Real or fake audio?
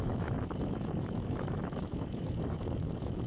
fake